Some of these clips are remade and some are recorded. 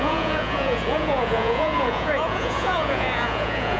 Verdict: remade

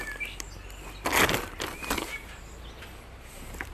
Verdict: recorded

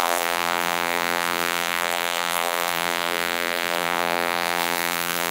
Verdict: remade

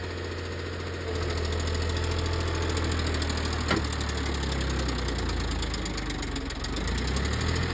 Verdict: recorded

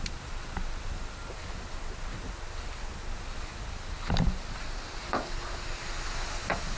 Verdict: recorded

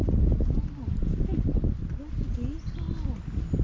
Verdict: recorded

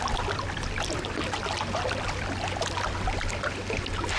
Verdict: recorded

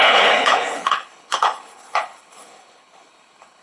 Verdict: remade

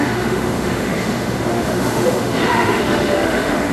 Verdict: remade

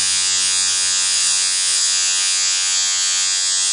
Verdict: remade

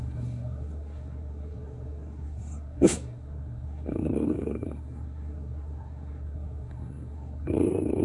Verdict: remade